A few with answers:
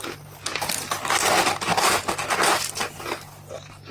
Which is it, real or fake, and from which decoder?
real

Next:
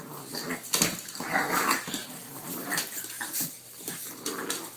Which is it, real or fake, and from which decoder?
real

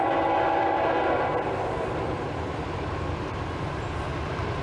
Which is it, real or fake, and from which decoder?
fake, vocoder, BigVGAN v2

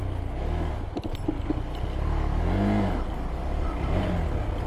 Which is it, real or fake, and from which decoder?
real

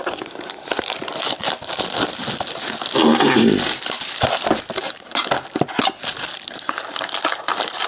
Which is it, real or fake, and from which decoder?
fake, vocoder, BigVGAN v2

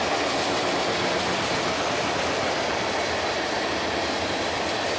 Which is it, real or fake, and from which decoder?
fake, vocoder, BigVGAN v2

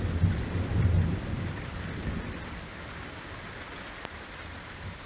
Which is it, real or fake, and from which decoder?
fake, vocoder, BigVGAN v2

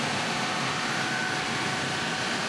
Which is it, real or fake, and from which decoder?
real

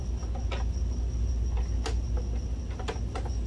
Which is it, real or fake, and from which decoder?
real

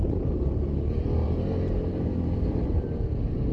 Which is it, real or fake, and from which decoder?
fake, vocoder, BigVGAN v2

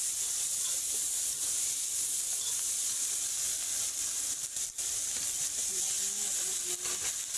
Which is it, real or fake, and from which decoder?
real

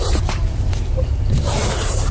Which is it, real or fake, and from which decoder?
fake, vocoder, BigVGAN v2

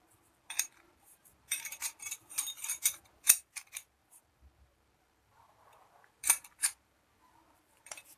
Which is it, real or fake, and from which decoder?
fake, vocoder, BigVGAN v2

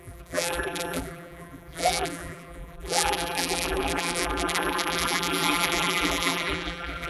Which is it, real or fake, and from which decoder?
fake, vocoder, BigVGAN v2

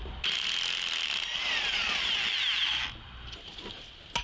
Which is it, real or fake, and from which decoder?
real